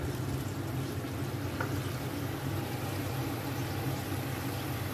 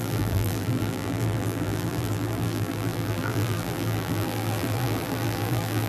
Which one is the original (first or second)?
first